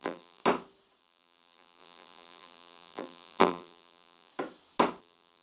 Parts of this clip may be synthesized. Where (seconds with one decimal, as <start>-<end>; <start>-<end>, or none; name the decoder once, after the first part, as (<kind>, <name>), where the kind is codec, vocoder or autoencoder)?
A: 0.0-0.4 (vocoder, BigVGAN v2); 1.0-4.3; 5.0-5.4